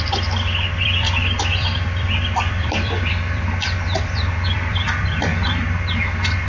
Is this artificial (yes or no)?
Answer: yes